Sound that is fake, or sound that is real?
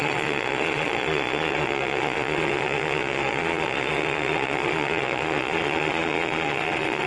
fake